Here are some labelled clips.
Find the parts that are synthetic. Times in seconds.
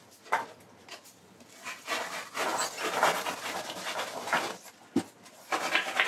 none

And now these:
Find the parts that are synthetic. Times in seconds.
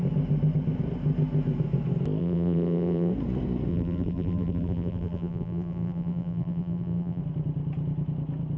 2.2-3.1 (vocoder, BigVGAN v2); 3.7-7.2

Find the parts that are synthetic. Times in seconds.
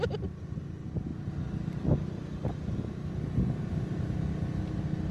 none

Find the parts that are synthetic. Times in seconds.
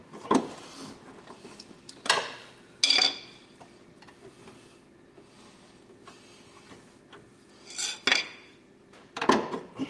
8.1-9.9 (vocoder, BigVGAN v2)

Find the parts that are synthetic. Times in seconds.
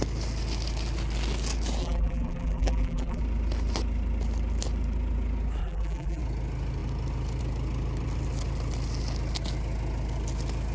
1.8-3.2 (vocoder, BigVGAN v2); 5.6-6.2